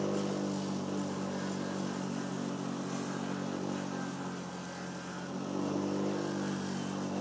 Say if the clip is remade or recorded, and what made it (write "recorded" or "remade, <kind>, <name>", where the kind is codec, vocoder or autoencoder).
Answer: recorded